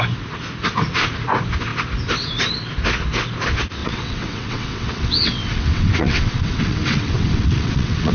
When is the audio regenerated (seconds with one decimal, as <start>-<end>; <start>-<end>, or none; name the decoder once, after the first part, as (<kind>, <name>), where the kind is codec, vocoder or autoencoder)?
3.8-8.1 (vocoder, WaveNeXt)